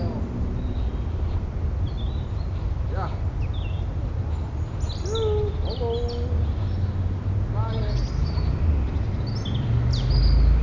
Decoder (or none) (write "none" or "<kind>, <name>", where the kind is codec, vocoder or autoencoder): none